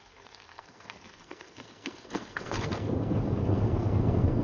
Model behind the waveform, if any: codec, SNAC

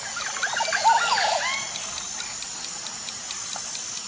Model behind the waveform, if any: none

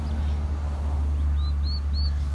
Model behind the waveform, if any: none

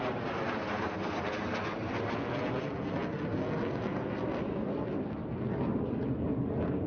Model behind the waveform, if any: none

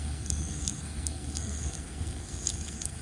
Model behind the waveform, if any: codec, SNAC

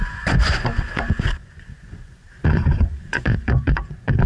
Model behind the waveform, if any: vocoder, Vocos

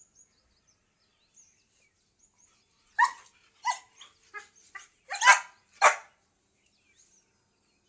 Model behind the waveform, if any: none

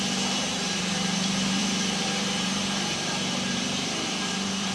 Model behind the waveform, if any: vocoder, BigVGAN v2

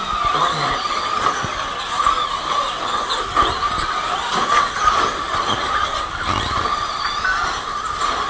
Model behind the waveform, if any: none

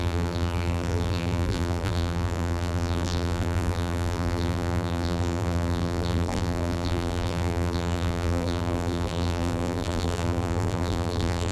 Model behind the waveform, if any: vocoder, BigVGAN v2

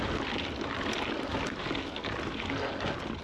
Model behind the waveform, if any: none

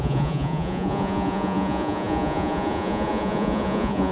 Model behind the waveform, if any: vocoder, Vocos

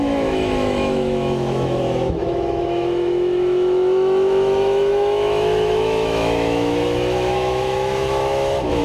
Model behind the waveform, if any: autoencoder, DAC-VAE